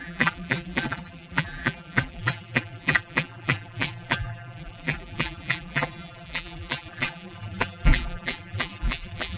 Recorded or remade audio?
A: remade